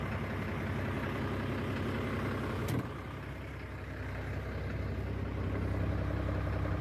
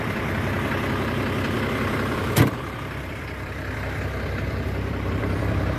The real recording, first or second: first